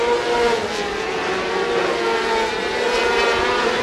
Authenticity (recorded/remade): recorded